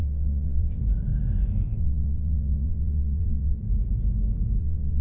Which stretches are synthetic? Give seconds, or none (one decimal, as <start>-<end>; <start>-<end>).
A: 0.0-0.8; 1.8-3.6; 4.6-5.0